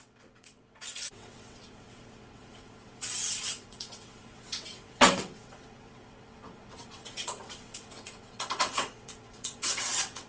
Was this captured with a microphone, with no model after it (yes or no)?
no